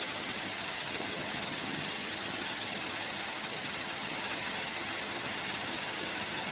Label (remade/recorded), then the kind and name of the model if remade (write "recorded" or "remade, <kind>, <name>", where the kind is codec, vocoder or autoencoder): remade, vocoder, HiFi-GAN